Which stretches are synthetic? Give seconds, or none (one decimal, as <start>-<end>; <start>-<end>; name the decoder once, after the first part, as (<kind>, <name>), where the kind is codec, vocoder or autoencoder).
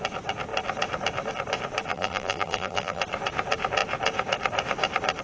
1.9-3.0 (vocoder, BigVGAN v2)